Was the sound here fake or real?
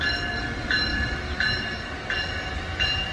real